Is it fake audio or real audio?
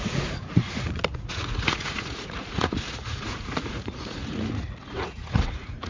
fake